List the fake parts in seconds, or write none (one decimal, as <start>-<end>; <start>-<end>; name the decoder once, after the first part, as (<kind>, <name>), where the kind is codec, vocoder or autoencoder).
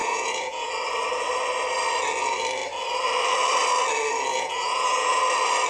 0.0-0.7 (vocoder, Vocos); 4.3-5.2